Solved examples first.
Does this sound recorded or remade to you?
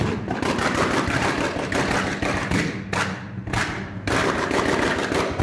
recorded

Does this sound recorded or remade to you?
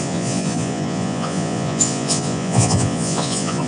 remade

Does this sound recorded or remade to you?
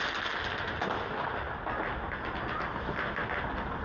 recorded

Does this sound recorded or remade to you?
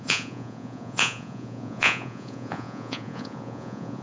remade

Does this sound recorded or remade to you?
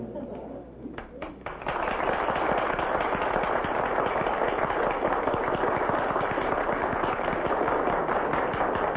recorded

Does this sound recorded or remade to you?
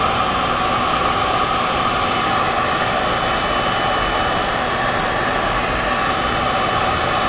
recorded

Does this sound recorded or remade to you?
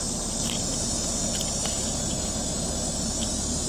recorded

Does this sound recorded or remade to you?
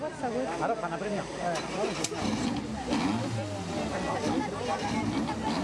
recorded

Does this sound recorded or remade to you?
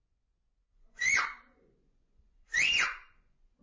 remade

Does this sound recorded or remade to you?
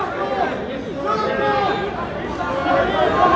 recorded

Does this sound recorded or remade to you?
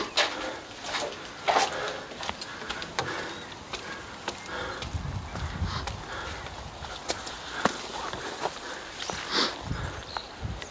recorded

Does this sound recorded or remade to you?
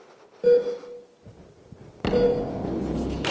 recorded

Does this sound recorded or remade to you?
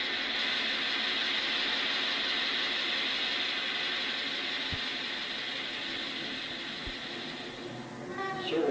recorded